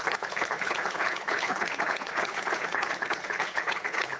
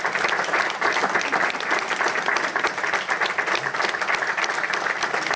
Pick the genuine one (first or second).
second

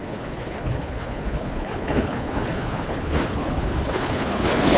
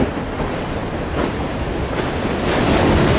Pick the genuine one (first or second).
second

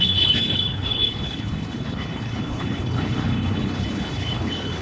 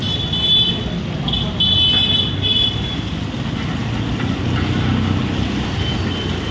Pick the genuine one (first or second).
second